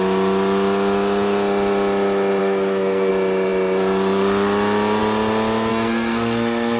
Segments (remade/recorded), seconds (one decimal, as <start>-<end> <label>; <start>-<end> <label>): 0.0-2.4 recorded; 2.4-3.1 remade; 3.1-5.7 recorded; 5.7-6.8 remade